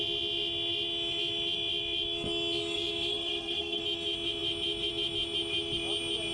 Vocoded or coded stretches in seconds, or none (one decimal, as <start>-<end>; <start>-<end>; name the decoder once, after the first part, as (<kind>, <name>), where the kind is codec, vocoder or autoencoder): 3.1-3.8 (codec, SNAC)